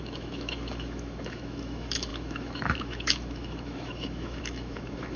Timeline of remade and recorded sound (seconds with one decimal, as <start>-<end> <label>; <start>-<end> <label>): 0.0-5.2 remade